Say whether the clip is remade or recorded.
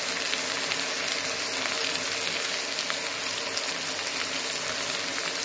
recorded